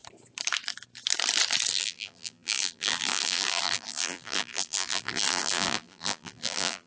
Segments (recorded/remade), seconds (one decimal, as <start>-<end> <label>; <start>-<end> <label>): 0.0-1.7 recorded; 1.7-6.9 remade